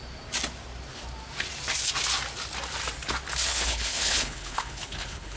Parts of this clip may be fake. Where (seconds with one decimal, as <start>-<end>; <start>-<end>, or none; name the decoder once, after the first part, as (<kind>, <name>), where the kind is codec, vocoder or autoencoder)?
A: 3.5-5.4 (codec, HILCodec)